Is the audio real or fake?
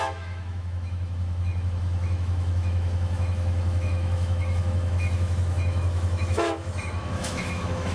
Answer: fake